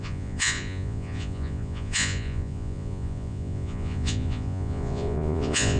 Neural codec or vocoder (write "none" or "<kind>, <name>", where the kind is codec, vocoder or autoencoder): vocoder, Vocos